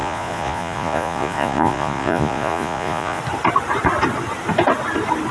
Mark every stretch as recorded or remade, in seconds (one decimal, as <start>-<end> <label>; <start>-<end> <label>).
0.0-3.2 remade; 3.2-5.3 recorded